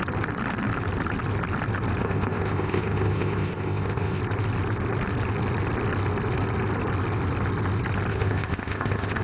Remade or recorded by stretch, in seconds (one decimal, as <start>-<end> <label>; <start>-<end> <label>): 0.0-2.0 recorded; 2.0-4.2 remade; 4.2-8.1 recorded; 8.1-9.2 remade